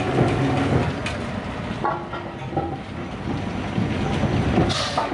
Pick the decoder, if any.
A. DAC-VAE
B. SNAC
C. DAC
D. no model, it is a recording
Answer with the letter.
D